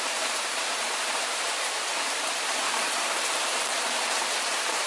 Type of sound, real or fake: fake